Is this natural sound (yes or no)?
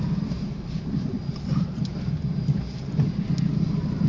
yes